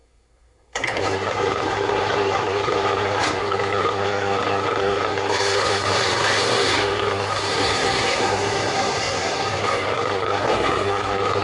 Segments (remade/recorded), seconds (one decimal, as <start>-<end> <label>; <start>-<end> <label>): 0.0-11.4 remade